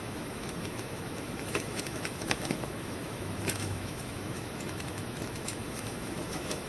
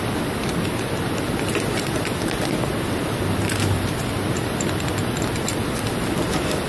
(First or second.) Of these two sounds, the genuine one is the second